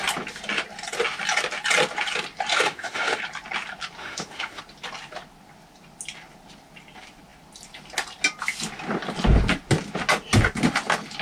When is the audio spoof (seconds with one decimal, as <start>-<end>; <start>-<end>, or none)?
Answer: 2.5-3.2; 4.0-4.6